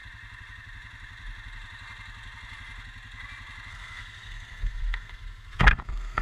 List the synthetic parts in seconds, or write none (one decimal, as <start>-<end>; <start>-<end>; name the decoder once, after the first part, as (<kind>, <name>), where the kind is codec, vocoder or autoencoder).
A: 3.7-6.2 (codec, SNAC)